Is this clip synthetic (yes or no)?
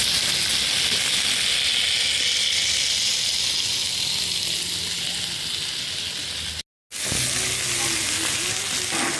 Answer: no